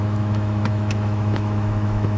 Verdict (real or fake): fake